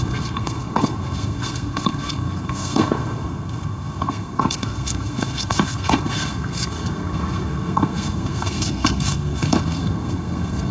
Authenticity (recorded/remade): remade